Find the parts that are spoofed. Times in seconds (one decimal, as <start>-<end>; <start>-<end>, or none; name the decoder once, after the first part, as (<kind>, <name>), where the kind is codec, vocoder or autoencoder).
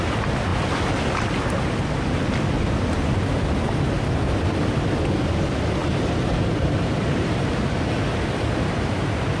5.8-8.0 (vocoder, BigVGAN v2)